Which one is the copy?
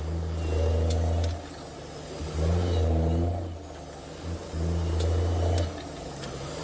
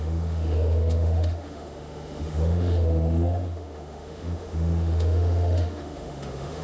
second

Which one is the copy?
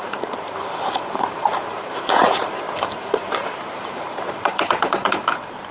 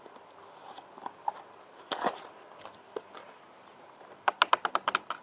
first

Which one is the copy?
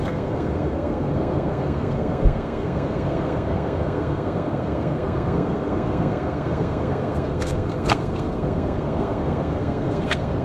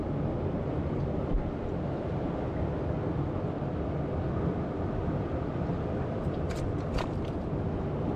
first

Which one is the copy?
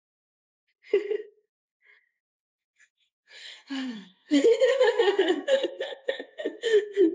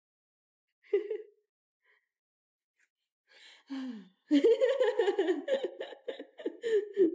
first